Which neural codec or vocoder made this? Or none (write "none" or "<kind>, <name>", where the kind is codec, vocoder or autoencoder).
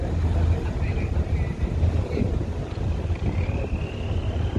none